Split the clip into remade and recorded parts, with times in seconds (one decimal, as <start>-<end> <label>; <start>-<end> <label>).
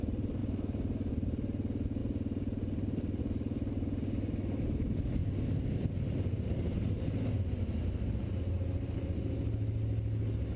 0.0-10.6 recorded